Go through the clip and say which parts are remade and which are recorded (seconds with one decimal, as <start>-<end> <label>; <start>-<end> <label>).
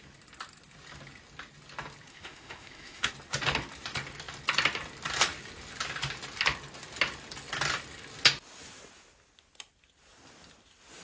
0.0-2.1 recorded; 2.1-3.1 remade; 3.1-11.0 recorded